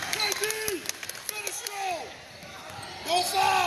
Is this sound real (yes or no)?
yes